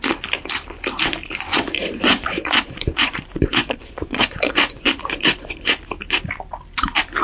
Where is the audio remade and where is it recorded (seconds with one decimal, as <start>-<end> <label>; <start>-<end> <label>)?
0.0-1.5 recorded; 1.5-5.8 remade; 5.8-7.2 recorded